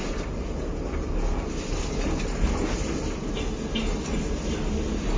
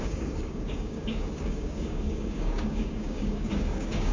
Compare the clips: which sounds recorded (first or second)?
first